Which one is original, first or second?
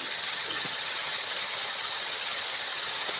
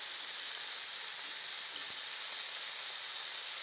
second